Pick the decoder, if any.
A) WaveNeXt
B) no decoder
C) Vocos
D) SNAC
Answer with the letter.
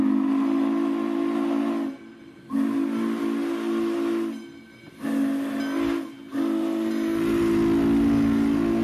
B